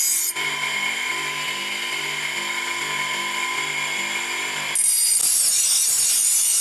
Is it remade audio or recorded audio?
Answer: recorded